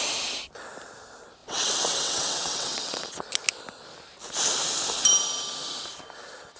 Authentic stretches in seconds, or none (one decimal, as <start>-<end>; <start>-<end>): 0.0-1.4; 3.2-6.6